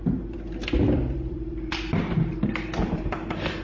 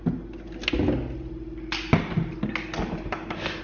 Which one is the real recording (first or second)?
second